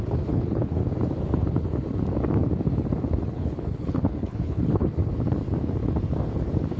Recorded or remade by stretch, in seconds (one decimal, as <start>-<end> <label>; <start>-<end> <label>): 0.0-0.8 remade; 0.8-3.3 recorded; 3.3-5.0 remade; 5.0-6.8 recorded